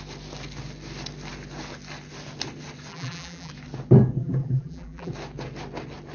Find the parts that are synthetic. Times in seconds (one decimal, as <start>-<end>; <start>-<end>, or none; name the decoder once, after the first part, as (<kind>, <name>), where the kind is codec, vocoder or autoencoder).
2.9-3.5 (vocoder, BigVGAN v2); 4.2-5.1

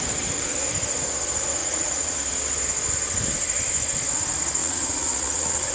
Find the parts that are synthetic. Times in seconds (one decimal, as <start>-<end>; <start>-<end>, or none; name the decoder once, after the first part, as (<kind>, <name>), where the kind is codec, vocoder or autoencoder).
1.6-2.2 (vocoder, Vocos); 4.6-5.7

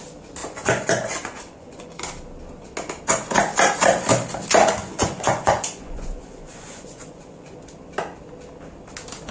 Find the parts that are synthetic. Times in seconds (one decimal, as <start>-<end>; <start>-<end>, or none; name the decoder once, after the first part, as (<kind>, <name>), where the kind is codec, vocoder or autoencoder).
0.4-2.0 (vocoder, Vocos); 4.8-7.6

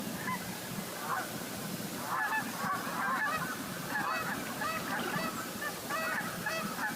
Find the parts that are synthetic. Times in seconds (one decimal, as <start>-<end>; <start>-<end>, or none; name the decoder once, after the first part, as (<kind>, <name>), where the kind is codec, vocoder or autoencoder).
none